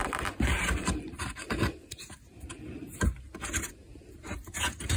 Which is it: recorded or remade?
remade